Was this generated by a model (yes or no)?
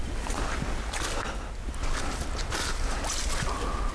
no